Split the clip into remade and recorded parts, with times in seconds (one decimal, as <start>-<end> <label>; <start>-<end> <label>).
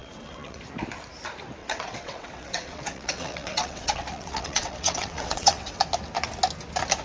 0.0-0.6 remade; 0.6-1.6 recorded; 1.6-5.8 remade; 5.8-7.0 recorded